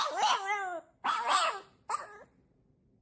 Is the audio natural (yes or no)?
yes